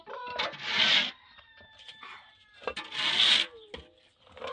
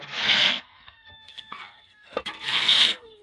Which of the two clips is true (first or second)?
first